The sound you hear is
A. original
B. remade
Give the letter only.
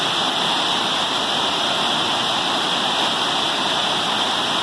A